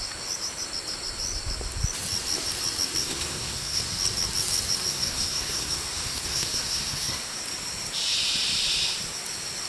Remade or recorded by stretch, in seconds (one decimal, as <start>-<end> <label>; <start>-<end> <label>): 0.0-3.0 recorded; 3.0-3.8 remade; 3.8-4.9 recorded; 4.9-7.4 remade; 7.4-9.7 recorded

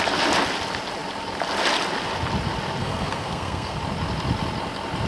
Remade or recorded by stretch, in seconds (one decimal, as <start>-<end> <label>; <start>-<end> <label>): 0.0-2.8 recorded; 2.8-3.8 remade; 3.8-5.1 recorded

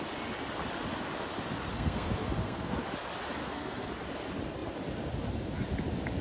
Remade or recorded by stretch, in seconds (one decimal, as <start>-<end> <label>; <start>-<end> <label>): 0.0-1.7 recorded; 1.7-2.8 remade; 2.8-3.4 recorded; 3.4-3.9 remade; 3.9-6.2 recorded

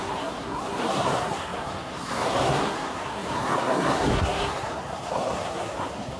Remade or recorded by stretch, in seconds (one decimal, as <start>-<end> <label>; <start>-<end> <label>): 0.0-6.2 remade

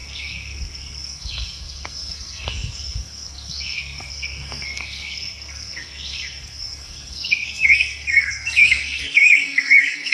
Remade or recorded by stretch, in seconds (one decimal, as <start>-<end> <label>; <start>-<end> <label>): 0.0-10.1 remade